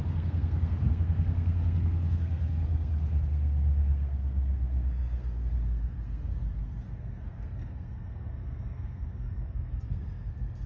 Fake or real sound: fake